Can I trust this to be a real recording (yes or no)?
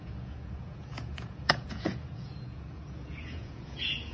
no